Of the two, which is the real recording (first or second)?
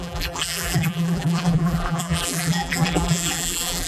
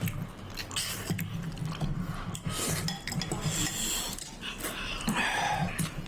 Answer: second